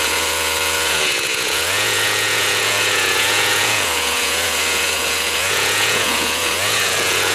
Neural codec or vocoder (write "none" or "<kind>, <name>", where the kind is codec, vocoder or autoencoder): vocoder, Vocos